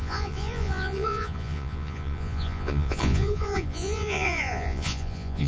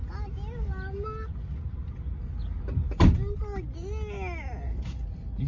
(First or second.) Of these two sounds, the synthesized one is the first